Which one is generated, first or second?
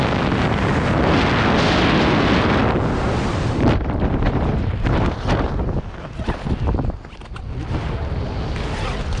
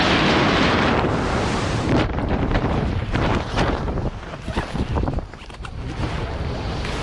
second